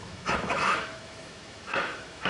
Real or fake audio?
fake